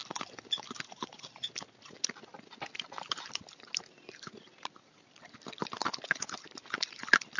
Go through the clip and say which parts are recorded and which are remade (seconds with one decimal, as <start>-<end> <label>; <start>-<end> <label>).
0.0-7.4 recorded